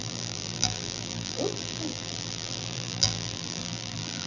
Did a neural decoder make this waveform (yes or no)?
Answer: yes